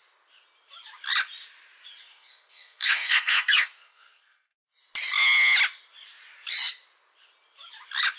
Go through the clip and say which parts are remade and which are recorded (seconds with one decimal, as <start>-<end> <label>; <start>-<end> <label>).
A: 0.0-2.0 recorded; 2.0-4.6 remade; 4.6-8.2 recorded